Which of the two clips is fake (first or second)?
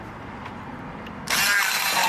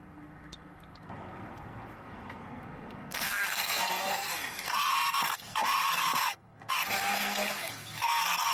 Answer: second